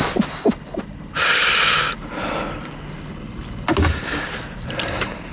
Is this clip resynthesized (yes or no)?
no